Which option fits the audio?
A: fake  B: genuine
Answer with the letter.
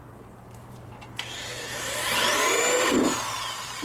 A